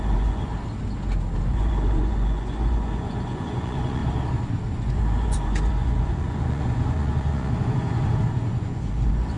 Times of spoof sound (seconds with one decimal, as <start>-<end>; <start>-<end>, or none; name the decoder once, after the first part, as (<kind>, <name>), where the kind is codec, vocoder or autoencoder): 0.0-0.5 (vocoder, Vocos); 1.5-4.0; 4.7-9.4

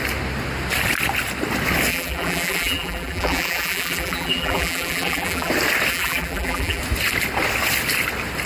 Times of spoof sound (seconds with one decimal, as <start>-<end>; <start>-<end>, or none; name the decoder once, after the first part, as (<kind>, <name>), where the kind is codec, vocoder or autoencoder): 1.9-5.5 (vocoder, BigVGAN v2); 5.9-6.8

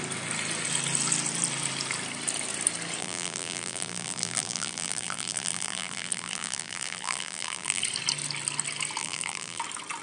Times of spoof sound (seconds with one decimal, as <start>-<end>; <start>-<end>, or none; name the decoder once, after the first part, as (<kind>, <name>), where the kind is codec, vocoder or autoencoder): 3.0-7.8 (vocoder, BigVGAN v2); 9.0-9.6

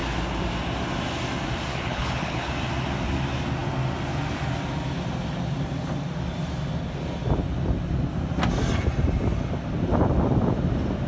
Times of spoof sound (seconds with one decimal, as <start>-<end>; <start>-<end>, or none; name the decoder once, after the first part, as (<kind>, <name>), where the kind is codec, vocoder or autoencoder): 1.7-2.5 (codec, HILCodec)